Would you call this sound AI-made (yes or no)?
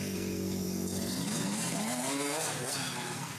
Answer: yes